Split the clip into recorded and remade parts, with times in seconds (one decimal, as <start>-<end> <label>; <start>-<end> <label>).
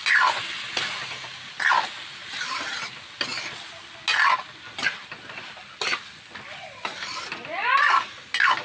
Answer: 0.0-2.2 recorded; 2.2-2.8 remade; 2.8-8.6 recorded